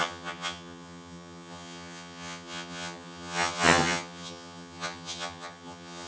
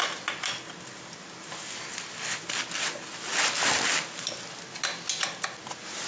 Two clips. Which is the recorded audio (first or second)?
second